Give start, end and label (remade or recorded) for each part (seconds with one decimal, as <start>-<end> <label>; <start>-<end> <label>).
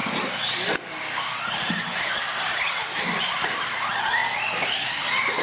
0.0-5.4 recorded